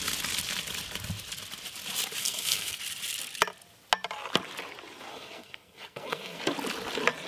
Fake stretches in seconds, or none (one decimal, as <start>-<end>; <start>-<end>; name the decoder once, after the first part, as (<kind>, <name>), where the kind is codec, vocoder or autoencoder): 2.2-2.8 (codec, SNAC); 5.1-6.4